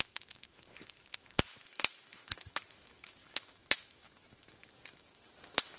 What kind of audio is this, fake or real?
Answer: fake